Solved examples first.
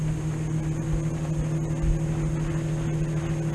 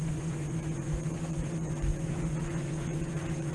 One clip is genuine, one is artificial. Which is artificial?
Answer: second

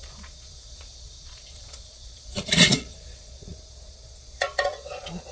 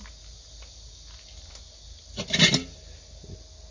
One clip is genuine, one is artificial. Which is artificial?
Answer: first